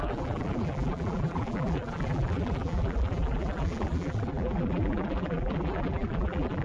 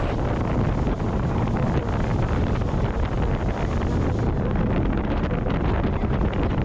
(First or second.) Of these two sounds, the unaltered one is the second